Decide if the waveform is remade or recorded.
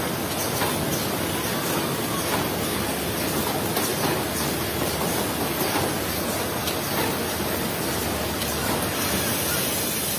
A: recorded